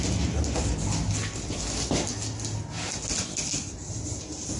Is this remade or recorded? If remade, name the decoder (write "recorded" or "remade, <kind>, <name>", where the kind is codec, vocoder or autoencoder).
recorded